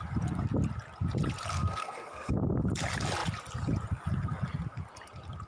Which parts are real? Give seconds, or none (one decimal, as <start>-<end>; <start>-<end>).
0.0-1.5; 2.3-5.5